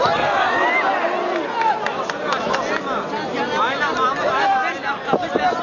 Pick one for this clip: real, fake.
real